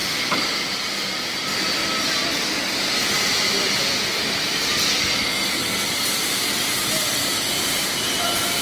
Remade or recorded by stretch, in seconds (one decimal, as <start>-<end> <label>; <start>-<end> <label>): 0.0-8.6 recorded